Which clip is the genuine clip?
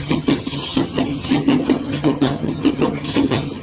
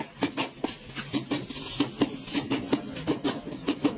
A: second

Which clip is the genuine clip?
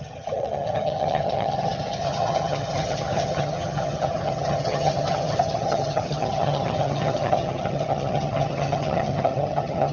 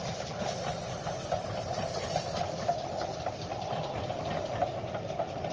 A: second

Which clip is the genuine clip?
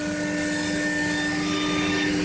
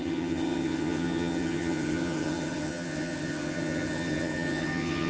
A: first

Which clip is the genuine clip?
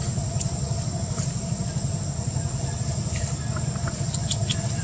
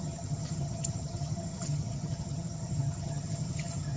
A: first